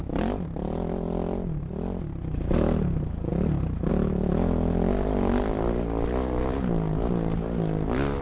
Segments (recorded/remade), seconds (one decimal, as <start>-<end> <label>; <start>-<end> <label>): 0.0-8.2 recorded